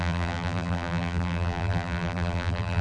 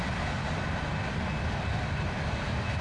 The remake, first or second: first